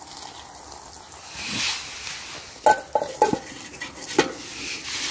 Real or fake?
real